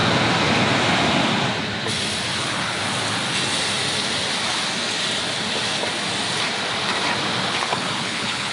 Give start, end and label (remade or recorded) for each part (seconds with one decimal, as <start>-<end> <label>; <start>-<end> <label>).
0.0-2.4 recorded; 2.4-2.8 remade; 2.8-7.5 recorded; 7.5-8.5 remade